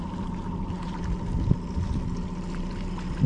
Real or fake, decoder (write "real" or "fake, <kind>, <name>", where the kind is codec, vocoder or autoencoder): real